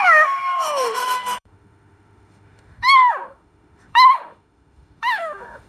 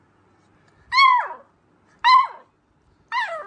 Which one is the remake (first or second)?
first